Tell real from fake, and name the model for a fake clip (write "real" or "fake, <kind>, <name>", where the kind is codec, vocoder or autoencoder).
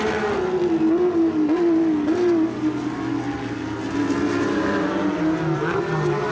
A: real